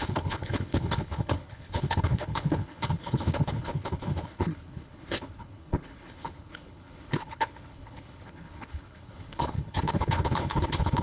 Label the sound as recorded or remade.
remade